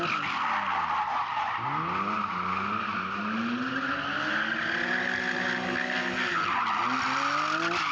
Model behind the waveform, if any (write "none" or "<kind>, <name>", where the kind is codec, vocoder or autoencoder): none